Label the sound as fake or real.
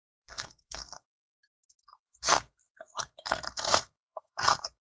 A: fake